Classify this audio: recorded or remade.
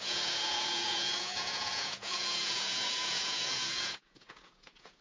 remade